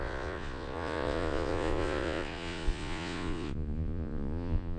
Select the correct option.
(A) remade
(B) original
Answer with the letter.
A